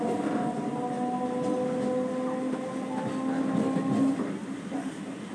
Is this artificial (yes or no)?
no